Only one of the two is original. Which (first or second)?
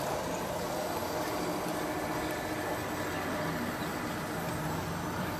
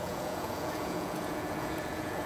first